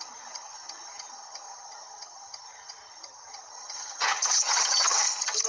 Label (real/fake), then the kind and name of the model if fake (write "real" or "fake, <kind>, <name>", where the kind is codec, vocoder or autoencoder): fake, vocoder, HiFi-GAN